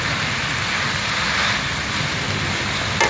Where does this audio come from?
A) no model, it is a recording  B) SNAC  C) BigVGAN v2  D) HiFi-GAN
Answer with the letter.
A